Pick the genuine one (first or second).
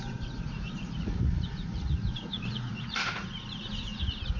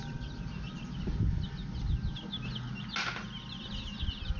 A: second